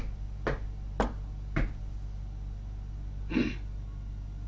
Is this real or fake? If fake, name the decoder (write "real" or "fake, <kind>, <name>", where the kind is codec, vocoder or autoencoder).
real